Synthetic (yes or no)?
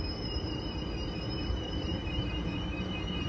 no